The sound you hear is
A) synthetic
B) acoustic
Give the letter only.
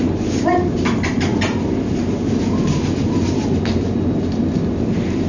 B